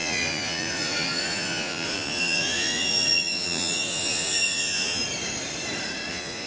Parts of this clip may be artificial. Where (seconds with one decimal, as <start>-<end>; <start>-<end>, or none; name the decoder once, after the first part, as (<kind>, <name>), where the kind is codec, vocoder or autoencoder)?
0.0-5.0 (vocoder, Vocos); 6.1-6.5